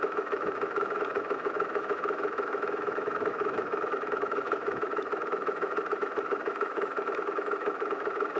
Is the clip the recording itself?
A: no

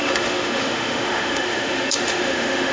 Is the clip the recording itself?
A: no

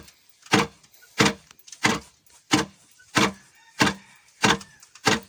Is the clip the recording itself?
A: yes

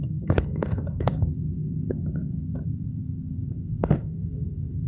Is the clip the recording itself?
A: no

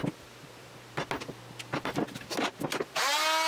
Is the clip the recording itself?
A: yes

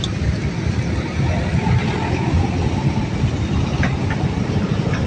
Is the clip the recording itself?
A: yes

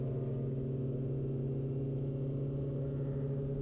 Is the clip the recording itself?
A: yes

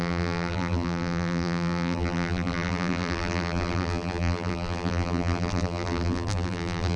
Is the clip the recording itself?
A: no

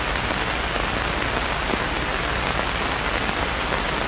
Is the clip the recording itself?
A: yes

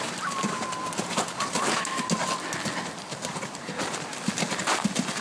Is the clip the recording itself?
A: yes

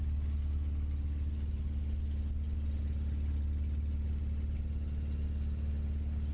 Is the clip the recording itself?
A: yes